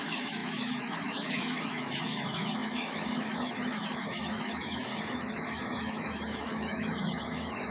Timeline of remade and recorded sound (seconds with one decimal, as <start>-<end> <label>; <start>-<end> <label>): 0.0-7.7 remade